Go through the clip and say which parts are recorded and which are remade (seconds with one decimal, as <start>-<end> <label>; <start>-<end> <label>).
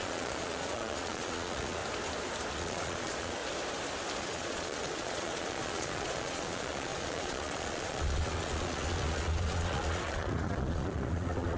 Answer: 0.0-1.8 remade; 1.8-2.5 recorded; 2.5-3.4 remade; 3.4-4.2 recorded; 4.2-11.6 remade